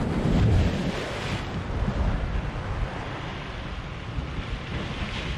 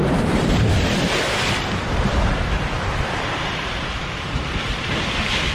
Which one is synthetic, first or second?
second